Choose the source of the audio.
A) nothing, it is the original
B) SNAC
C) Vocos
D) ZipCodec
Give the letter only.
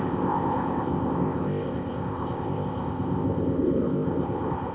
D